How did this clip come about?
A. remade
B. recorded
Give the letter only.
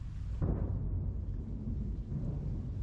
B